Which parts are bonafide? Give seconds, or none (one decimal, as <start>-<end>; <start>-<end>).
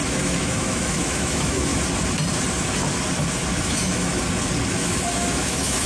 1.7-3.5; 4.1-4.7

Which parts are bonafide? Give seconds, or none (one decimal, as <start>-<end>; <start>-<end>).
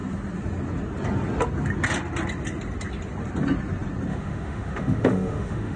0.0-4.1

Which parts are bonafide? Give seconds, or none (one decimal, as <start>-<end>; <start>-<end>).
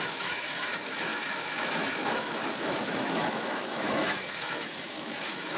none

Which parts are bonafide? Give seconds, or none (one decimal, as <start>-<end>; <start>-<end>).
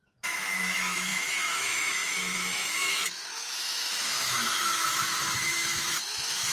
none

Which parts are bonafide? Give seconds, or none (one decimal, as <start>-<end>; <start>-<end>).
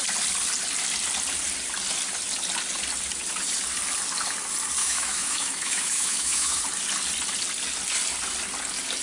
0.0-4.8; 6.6-9.0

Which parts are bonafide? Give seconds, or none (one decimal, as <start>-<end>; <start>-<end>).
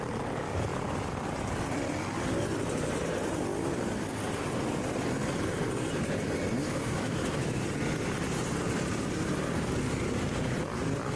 0.0-6.6; 7.6-11.2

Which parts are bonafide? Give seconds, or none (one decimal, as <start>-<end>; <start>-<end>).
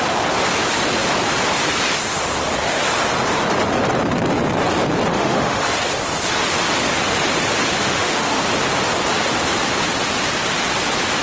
0.0-5.1; 5.7-7.8; 8.4-11.2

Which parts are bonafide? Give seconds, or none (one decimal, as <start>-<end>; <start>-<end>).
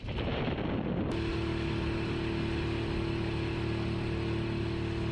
0.0-5.1